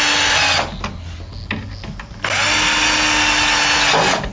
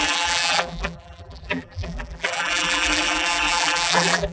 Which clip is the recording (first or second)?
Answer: first